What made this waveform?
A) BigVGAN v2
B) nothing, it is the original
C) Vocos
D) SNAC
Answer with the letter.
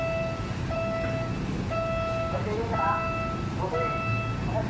B